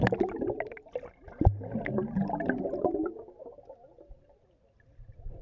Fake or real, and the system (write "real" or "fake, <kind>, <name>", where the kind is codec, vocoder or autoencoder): real